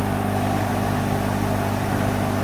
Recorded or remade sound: recorded